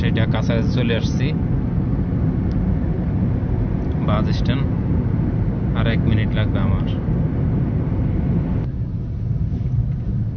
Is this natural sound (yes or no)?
yes